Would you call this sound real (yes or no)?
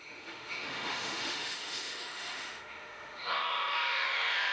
no